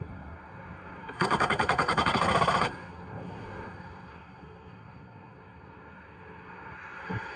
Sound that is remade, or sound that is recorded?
remade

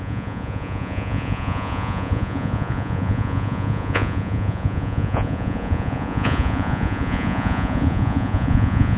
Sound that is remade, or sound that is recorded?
remade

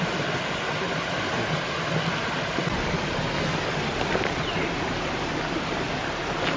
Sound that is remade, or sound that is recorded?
recorded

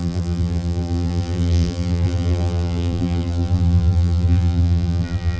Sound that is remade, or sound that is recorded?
remade